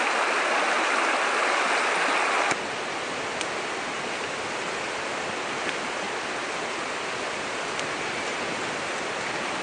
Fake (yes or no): no